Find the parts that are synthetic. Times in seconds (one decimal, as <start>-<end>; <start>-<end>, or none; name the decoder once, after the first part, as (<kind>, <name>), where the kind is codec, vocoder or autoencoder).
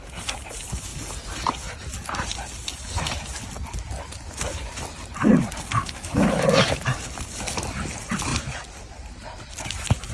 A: 5.8-6.4 (autoencoder, DAC-VAE)